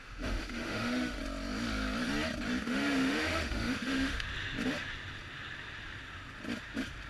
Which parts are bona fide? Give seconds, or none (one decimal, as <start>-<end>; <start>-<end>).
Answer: 1.2-2.6; 4.3-7.1